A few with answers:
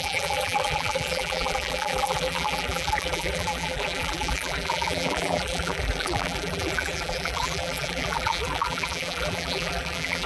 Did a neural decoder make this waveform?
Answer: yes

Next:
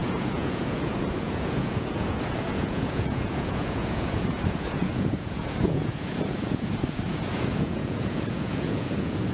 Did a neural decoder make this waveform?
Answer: yes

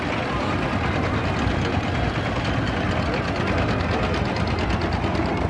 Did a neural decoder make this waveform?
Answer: no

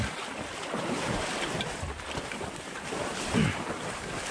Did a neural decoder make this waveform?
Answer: no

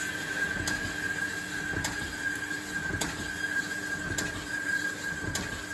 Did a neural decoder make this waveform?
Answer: no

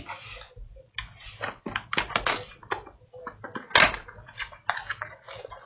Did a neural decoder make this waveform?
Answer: no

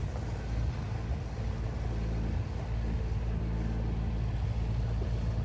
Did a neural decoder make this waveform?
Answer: no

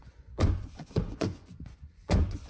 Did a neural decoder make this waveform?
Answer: yes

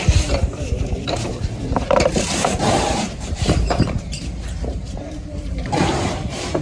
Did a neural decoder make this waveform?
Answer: yes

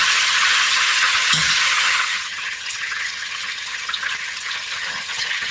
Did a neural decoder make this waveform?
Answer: yes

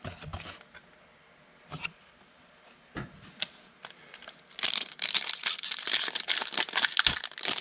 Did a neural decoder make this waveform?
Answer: no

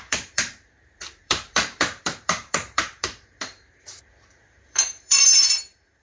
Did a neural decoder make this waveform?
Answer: yes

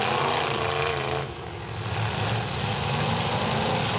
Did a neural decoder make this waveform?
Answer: no